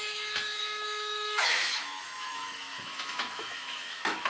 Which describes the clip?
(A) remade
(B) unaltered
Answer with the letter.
A